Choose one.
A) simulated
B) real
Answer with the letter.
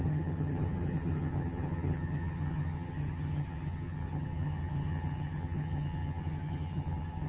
A